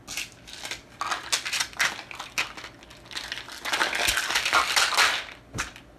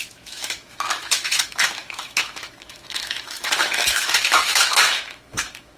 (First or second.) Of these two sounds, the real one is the first